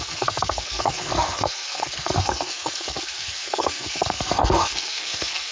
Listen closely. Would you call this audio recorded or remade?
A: remade